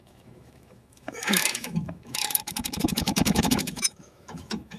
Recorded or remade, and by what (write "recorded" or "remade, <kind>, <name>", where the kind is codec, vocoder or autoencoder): remade, autoencoder, DAC-VAE